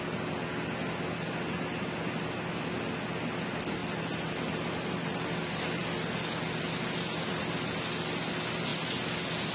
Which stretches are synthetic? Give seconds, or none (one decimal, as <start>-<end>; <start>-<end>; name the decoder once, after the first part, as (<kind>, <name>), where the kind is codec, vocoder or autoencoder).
3.8-6.8 (vocoder, BigVGAN v2)